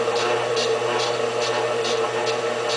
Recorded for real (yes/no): yes